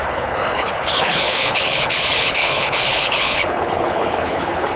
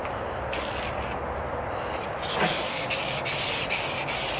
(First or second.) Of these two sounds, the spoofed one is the first